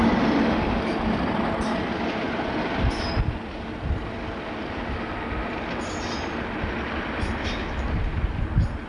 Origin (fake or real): real